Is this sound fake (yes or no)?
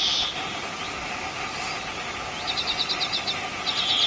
no